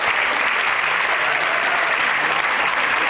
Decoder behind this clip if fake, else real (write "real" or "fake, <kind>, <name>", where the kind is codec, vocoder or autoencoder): real